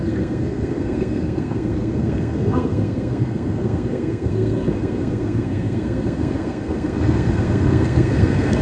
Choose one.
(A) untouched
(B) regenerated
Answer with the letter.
B